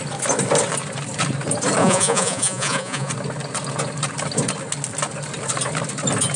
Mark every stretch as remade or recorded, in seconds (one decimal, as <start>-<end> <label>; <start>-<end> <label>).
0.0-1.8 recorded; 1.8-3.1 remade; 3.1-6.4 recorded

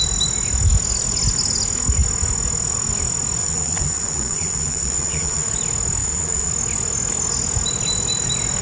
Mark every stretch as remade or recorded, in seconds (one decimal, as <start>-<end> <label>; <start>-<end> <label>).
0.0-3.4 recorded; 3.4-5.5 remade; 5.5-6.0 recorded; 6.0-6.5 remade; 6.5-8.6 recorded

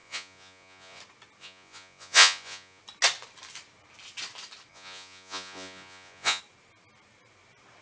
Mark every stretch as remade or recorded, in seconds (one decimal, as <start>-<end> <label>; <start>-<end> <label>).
0.0-1.0 remade; 1.0-1.4 recorded; 1.4-2.8 remade; 2.8-4.7 recorded; 4.7-6.4 remade; 6.4-7.8 recorded